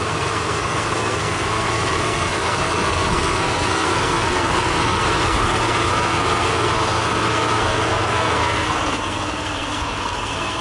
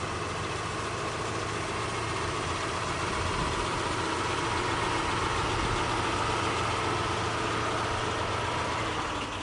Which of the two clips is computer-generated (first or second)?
first